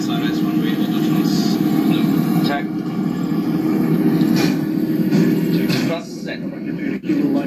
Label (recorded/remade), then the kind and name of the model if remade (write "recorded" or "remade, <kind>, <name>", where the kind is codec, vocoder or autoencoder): recorded